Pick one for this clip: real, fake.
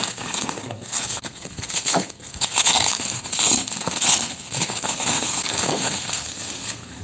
fake